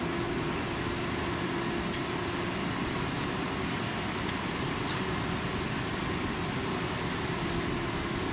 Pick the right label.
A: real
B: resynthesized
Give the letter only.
A